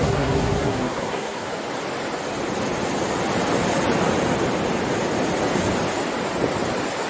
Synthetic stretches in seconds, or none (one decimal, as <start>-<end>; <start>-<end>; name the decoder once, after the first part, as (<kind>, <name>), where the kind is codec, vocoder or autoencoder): 0.0-1.5 (codec, SNAC)